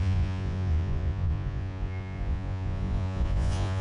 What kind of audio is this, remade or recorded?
remade